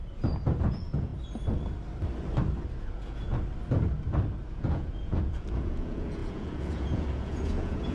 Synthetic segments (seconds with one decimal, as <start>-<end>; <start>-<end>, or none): 0.6-1.1; 2.9-3.3; 4.5-7.9